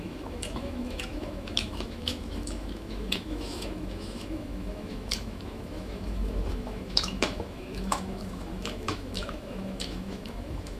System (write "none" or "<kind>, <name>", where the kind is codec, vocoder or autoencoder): autoencoder, DAC-VAE